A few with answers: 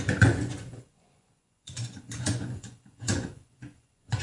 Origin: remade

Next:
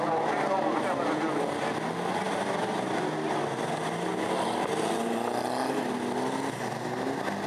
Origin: recorded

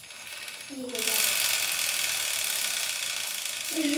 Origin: recorded